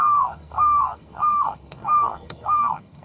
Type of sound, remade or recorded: remade